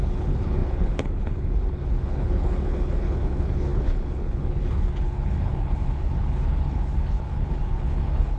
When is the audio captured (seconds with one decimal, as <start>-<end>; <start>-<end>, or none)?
none